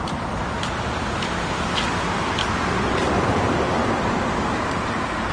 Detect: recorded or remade remade